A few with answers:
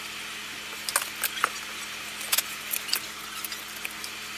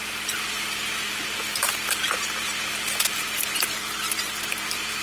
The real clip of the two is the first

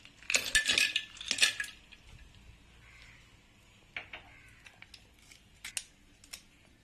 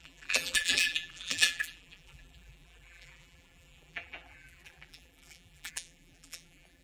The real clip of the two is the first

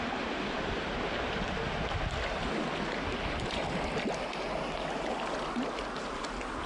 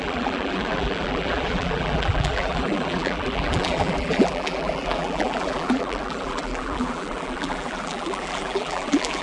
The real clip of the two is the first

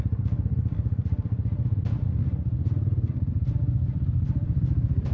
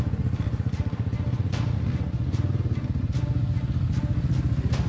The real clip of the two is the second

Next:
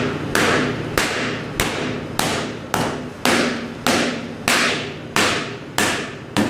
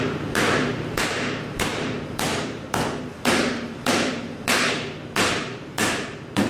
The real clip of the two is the first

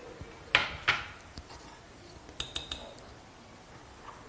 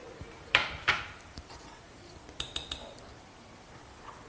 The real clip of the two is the first